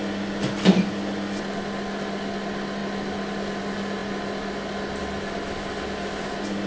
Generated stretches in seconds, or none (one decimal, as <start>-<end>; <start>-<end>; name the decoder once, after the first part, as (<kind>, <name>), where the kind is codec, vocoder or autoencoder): none